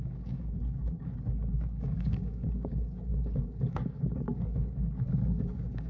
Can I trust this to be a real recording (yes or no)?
no